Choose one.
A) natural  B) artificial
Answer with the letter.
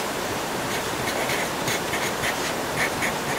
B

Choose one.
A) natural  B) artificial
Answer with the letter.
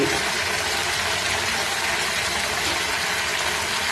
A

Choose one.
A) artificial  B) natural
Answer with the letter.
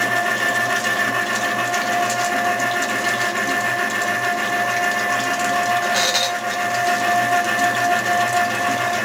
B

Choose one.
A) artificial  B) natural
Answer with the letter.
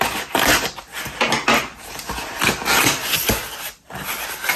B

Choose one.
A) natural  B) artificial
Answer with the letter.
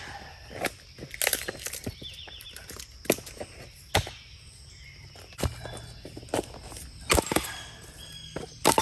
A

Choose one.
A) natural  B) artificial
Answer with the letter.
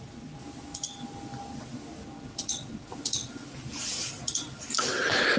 A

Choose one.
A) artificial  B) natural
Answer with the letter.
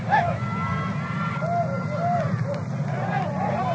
B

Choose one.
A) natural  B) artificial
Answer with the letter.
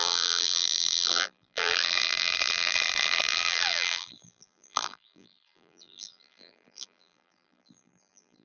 B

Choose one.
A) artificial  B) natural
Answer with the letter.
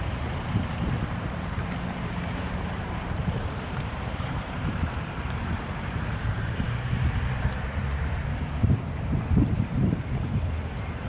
A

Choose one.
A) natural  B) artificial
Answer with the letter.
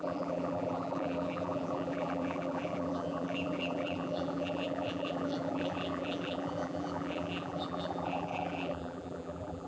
B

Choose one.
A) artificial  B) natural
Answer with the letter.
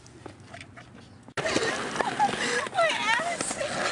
B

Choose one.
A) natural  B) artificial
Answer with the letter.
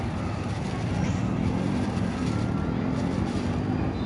A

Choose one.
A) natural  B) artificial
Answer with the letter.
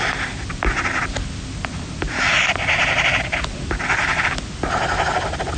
A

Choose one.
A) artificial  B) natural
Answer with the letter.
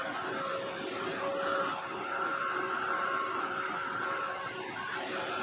B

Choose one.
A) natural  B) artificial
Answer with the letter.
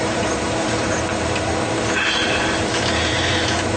B